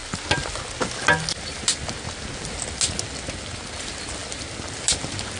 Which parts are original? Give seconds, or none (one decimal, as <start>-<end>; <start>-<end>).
0.0-5.4